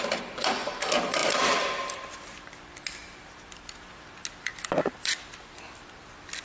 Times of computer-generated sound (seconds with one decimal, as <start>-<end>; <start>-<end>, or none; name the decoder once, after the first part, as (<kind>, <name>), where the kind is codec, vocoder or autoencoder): 1.2-2.1 (vocoder, BigVGAN v2)